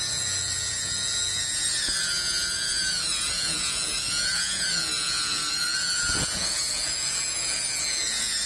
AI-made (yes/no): yes